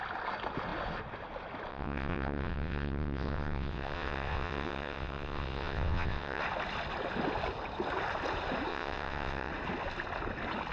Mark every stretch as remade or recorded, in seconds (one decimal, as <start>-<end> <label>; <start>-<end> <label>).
0.0-1.7 recorded; 1.7-6.4 remade; 6.4-8.7 recorded; 8.7-9.5 remade; 9.5-10.7 recorded